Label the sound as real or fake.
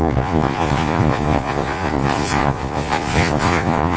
fake